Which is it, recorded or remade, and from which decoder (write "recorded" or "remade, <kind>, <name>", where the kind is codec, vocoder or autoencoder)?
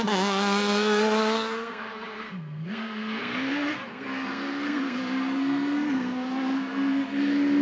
remade, codec, SNAC